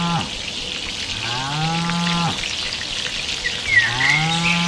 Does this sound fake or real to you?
real